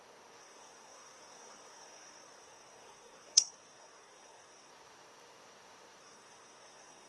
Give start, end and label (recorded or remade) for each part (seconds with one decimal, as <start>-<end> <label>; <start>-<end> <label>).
0.0-0.4 recorded; 0.4-4.7 remade; 4.7-6.0 recorded; 6.0-7.1 remade